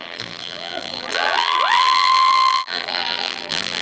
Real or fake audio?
fake